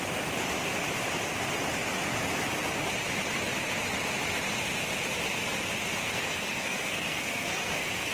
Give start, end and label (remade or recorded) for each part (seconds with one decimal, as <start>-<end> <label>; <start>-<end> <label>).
0.0-6.0 recorded; 6.0-8.1 remade